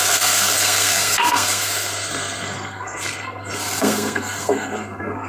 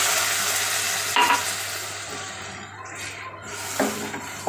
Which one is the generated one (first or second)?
first